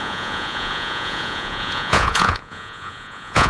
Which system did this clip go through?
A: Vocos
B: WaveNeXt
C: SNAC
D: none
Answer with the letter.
A